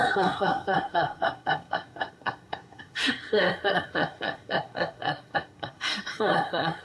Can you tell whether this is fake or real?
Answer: fake